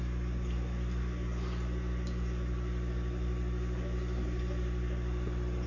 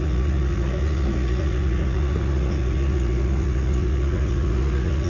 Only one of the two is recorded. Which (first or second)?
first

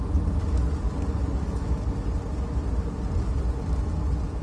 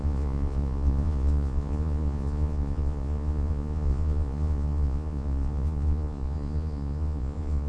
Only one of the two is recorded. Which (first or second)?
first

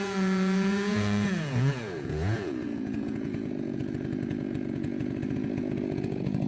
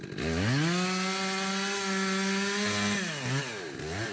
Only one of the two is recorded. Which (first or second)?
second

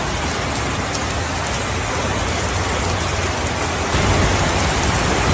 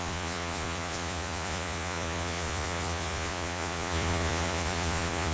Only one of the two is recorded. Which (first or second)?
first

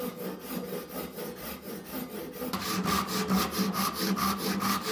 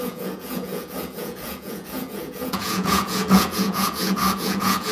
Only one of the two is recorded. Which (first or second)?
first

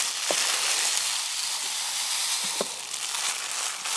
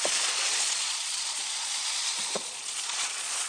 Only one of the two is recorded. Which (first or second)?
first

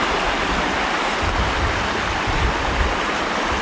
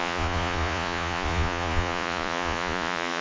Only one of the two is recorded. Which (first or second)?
first